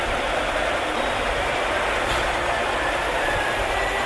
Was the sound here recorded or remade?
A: recorded